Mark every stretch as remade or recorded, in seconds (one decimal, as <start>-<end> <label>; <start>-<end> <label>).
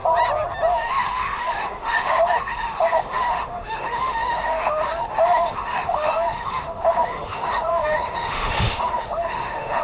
0.0-0.7 recorded; 0.7-9.8 remade